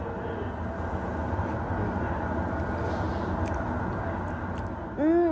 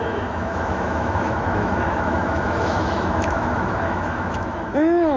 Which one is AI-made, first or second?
second